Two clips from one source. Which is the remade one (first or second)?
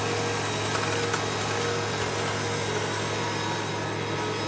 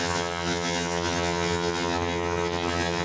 second